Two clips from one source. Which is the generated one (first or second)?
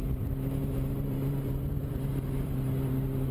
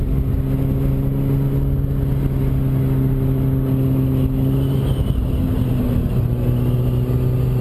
first